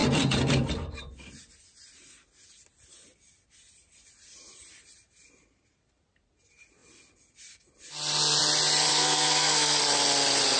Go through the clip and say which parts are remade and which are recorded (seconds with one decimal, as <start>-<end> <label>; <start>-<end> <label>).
0.0-8.9 recorded; 8.9-9.8 remade; 9.8-10.6 recorded